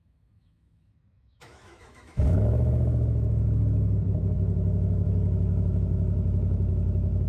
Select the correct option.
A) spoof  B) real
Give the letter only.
A